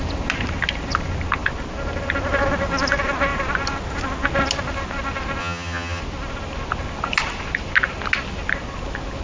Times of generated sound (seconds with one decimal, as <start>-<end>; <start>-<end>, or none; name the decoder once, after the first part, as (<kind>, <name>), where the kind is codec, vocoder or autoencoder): 5.4-6.0 (vocoder, HiFi-GAN)